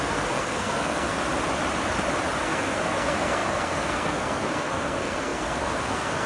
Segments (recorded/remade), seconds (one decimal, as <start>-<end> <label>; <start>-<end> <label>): 0.0-1.2 remade; 1.2-2.4 recorded; 2.4-6.3 remade